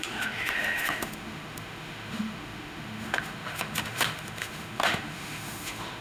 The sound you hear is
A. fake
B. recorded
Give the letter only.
A